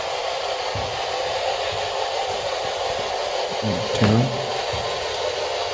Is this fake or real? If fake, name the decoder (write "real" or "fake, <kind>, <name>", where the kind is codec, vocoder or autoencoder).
real